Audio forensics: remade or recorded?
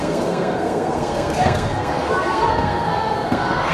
remade